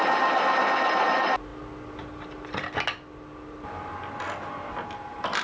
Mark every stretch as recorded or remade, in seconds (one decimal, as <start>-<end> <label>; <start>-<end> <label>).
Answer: 0.0-5.4 recorded